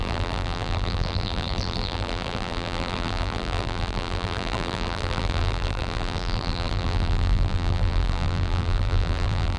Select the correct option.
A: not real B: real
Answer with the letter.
A